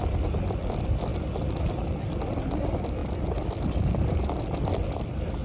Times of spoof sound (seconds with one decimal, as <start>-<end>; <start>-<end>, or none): none